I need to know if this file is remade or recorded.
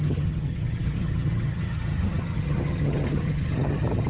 remade